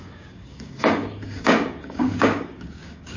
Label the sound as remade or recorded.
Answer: remade